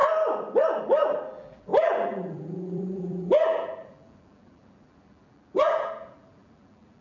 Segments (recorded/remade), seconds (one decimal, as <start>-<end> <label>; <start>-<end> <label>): 0.0-0.8 recorded; 0.8-7.0 remade